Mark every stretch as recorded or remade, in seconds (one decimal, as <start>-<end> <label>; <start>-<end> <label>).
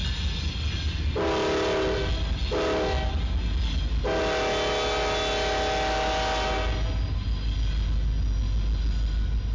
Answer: 0.0-9.5 recorded